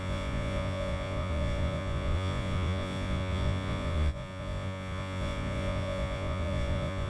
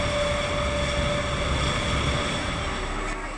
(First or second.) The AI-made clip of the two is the first